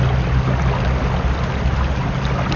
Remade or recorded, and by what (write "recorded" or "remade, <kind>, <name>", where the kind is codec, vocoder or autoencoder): recorded